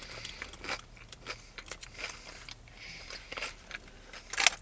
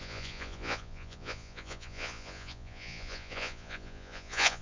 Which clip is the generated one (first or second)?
second